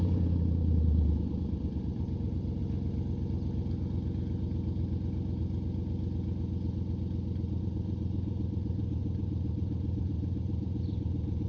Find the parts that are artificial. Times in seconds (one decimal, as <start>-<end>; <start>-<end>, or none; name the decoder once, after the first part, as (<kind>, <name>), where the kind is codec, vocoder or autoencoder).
0.0-2.6 (vocoder, BigVGAN v2); 7.6-11.5